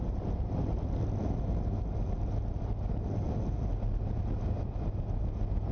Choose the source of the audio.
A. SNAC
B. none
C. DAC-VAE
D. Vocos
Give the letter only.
B